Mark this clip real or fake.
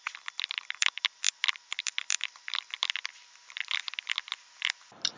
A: fake